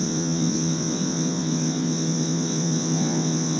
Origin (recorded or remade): remade